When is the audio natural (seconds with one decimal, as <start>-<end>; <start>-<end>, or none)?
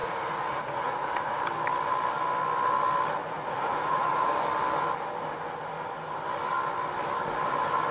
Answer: 1.4-3.2; 4.3-7.9